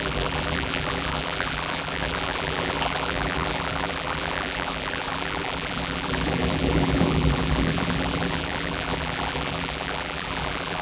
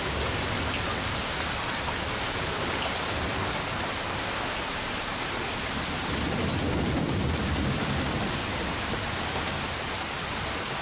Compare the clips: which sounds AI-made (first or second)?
first